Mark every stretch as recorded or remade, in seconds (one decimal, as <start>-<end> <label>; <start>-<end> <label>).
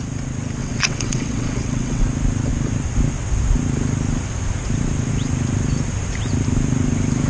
0.0-0.6 recorded; 0.6-2.0 remade; 2.0-7.3 recorded